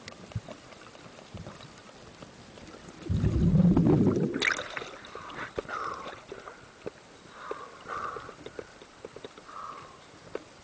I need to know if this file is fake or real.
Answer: real